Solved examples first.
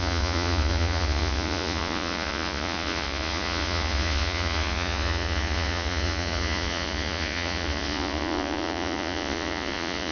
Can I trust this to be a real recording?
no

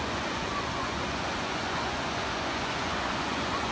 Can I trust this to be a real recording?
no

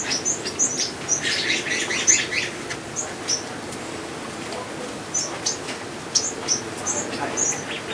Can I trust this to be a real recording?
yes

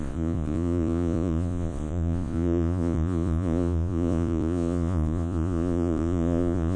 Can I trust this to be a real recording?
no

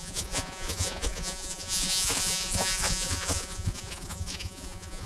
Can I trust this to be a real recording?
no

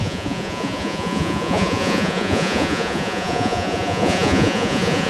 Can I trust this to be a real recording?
no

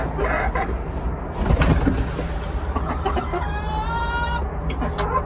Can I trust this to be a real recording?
yes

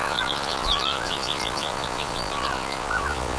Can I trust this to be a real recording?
no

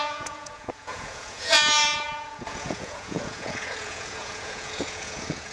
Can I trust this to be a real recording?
no